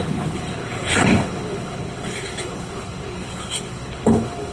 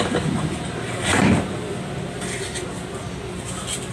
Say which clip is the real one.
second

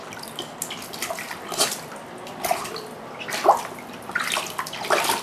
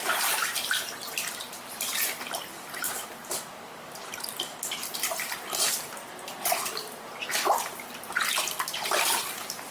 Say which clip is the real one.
first